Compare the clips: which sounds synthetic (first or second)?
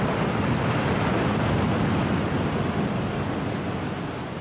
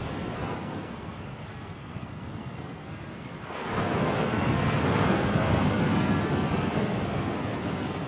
second